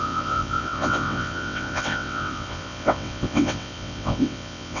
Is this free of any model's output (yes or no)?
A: no